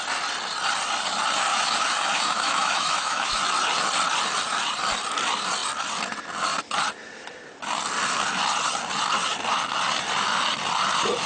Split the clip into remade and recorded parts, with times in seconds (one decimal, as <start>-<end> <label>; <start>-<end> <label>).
0.0-1.5 recorded; 1.5-3.4 remade; 3.4-11.3 recorded